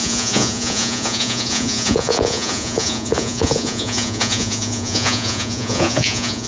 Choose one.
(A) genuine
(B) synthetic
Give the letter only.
B